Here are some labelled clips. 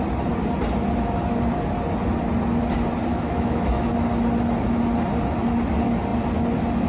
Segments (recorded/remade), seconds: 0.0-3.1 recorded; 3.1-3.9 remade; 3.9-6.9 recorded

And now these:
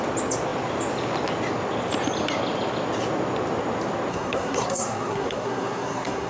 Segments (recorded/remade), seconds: 0.0-4.1 recorded; 4.1-6.3 remade

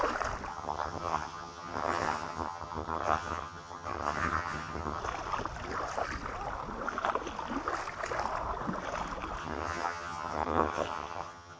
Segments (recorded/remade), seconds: 0.0-0.5 recorded; 0.5-5.0 remade; 5.0-9.4 recorded; 9.4-11.6 remade

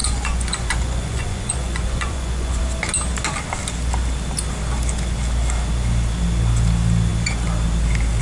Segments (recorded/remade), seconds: 0.0-2.6 remade; 2.6-8.2 recorded

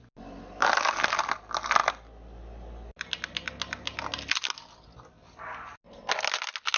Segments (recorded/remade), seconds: 0.0-6.8 recorded

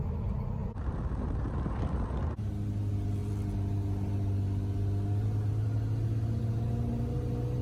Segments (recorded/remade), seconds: 0.0-0.6 recorded; 0.6-1.3 remade; 1.3-7.6 recorded